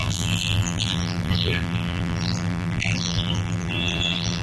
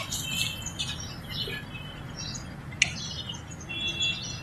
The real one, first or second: second